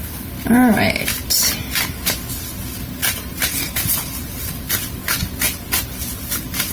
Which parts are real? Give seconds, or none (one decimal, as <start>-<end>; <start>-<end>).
0.0-3.0; 4.6-6.7